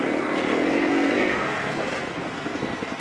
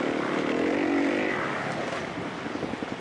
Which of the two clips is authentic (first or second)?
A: second